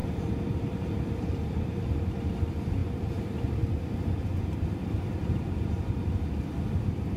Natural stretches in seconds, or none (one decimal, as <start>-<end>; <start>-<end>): 2.1-2.8; 6.0-7.2